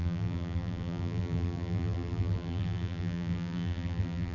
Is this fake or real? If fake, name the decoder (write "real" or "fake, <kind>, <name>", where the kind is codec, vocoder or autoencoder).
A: fake, vocoder, BigVGAN v2